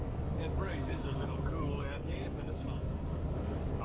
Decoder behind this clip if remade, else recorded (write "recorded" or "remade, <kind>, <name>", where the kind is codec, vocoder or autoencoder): remade, codec, DAC